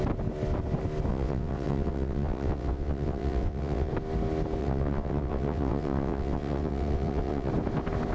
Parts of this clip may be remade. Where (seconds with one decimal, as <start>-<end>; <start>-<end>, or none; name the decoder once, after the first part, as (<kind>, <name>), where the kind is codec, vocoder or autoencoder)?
1.1-3.9 (vocoder, WaveNeXt); 4.6-7.5